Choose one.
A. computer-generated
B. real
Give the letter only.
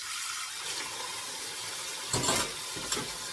B